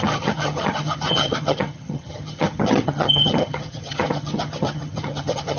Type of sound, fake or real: fake